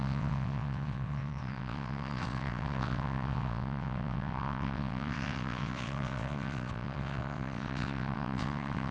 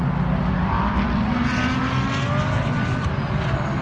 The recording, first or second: second